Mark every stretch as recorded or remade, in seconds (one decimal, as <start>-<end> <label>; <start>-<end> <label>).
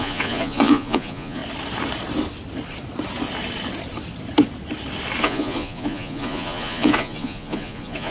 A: 0.0-1.4 remade; 1.4-5.2 recorded; 5.2-8.1 remade